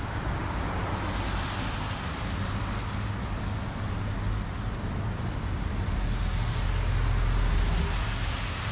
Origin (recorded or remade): recorded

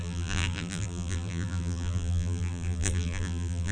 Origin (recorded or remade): remade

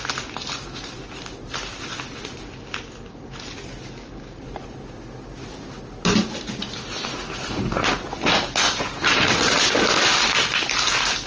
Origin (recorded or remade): recorded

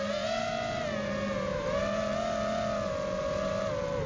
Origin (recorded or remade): recorded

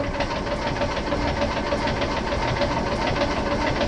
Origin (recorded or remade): recorded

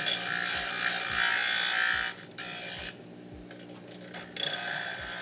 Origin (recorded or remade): recorded